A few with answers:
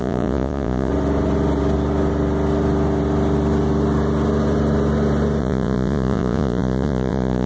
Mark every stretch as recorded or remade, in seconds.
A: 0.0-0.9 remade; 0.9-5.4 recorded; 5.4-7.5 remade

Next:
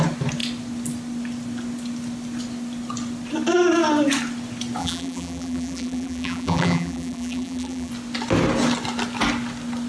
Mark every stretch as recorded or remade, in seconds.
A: 0.0-4.8 recorded; 4.8-7.9 remade; 7.9-9.9 recorded

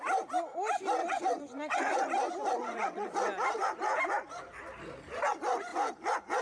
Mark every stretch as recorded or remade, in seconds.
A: 0.0-1.0 recorded; 1.0-2.0 remade; 2.0-2.5 recorded; 2.5-3.1 remade; 3.1-6.4 recorded

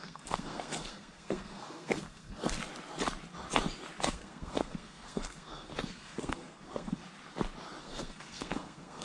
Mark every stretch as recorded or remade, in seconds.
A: 0.0-2.6 remade; 2.6-4.0 recorded; 4.0-7.0 remade; 7.0-7.8 recorded; 7.8-9.0 remade

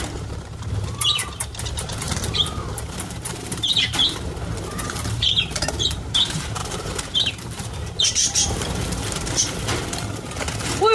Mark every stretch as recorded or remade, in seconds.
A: 0.0-10.9 remade